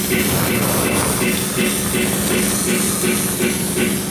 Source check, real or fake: real